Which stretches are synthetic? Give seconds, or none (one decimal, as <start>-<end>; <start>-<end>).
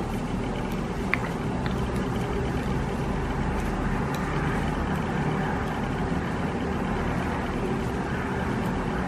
6.0-7.0